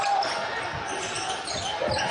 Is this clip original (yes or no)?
yes